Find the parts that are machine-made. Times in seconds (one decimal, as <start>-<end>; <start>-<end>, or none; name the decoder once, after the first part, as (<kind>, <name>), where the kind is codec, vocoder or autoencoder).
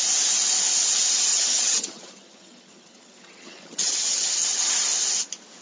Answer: 1.3-4.7 (vocoder, HiFi-GAN)